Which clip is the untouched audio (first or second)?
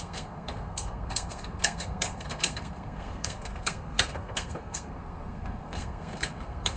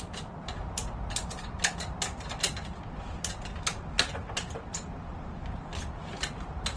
second